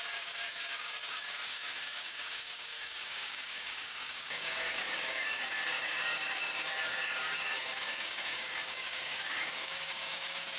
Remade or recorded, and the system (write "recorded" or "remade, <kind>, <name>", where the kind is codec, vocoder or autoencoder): remade, codec, DAC